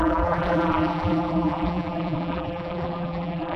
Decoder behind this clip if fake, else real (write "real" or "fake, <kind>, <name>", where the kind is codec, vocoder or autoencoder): fake, vocoder, BigVGAN v2